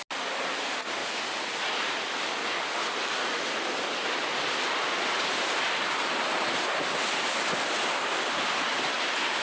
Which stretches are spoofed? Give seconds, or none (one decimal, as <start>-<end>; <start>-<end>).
none